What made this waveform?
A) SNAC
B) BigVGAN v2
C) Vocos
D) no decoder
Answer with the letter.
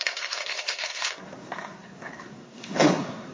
A